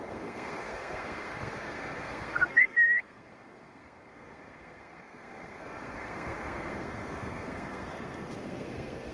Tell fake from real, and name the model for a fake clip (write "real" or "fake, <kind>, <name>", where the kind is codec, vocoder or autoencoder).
fake, codec, SNAC